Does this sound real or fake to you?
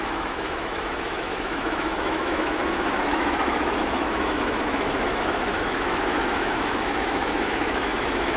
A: fake